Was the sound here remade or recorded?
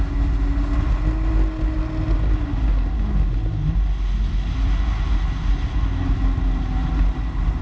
recorded